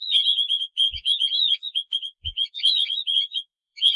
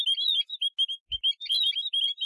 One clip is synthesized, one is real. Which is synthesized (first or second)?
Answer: first